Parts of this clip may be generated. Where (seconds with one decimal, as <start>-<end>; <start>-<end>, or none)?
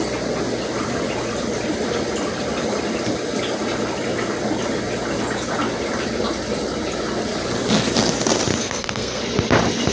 8.6-9.2